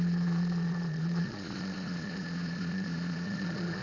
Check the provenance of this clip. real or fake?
fake